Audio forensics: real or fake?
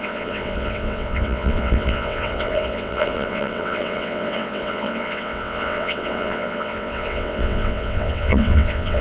fake